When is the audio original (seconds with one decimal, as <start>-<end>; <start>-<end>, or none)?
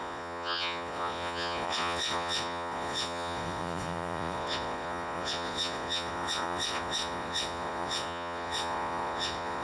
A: none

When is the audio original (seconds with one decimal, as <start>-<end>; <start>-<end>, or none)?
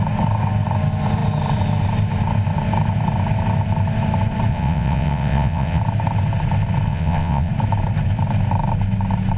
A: 0.0-4.5; 5.8-6.9; 7.5-9.4